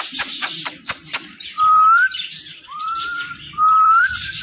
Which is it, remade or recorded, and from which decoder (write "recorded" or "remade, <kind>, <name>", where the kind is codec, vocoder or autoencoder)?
remade, vocoder, BigVGAN v2